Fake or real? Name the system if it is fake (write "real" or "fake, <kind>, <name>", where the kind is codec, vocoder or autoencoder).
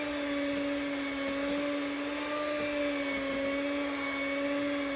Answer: real